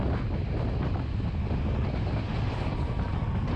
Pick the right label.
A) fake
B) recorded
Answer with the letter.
B